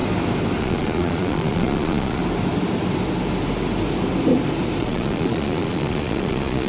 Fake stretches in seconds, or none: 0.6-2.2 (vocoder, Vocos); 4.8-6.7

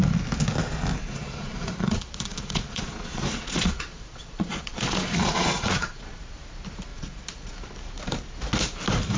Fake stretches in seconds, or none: 1.0-6.2 (vocoder, Vocos); 6.9-7.5